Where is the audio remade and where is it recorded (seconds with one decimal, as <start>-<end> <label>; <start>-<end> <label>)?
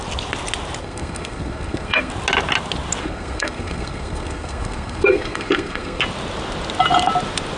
0.0-0.8 recorded; 0.8-2.1 remade; 2.1-3.0 recorded; 3.0-6.0 remade; 6.0-7.6 recorded